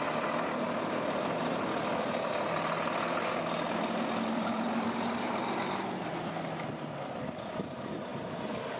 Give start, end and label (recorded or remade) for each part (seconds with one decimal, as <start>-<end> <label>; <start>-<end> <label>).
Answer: 0.0-8.8 recorded